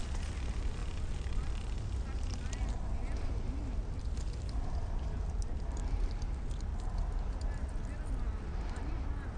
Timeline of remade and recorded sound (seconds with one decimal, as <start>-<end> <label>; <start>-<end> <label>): 0.0-9.4 recorded